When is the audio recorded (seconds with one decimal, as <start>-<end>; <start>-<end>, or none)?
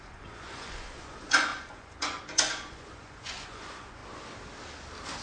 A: 4.0-5.2